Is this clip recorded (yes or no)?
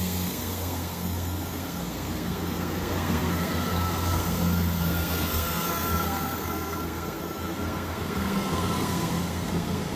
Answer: no